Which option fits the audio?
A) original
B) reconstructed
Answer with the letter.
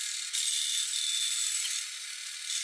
A